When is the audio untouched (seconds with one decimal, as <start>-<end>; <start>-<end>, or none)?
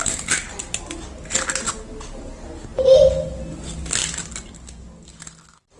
0.0-5.8